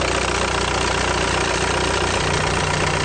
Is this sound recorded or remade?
recorded